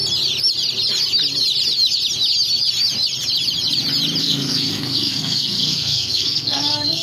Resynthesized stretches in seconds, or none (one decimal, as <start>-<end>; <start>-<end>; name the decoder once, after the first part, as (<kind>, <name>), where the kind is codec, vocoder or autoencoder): 4.2-7.0 (codec, SNAC)